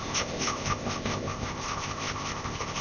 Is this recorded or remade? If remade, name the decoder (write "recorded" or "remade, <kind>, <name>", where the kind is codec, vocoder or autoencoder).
remade, codec, ZipCodec